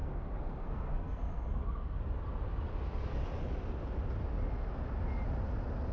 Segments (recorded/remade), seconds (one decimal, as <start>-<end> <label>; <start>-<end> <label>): 0.0-2.0 remade; 2.0-5.9 recorded